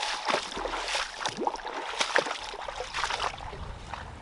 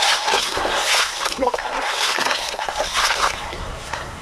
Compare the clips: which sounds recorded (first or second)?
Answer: first